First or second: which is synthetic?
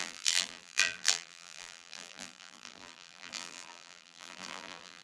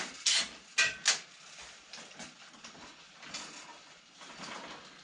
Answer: first